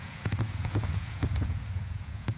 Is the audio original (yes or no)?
no